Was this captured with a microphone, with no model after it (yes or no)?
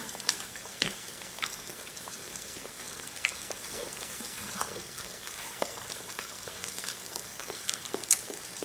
no